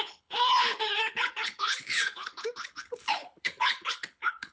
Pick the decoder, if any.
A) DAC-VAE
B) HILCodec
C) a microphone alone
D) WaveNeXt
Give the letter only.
B